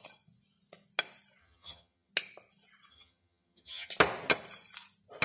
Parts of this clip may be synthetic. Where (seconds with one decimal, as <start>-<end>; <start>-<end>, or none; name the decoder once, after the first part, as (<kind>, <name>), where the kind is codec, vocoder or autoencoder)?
1.4-2.1 (vocoder, HiFi-GAN); 2.9-3.9